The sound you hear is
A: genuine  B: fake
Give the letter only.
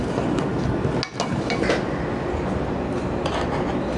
A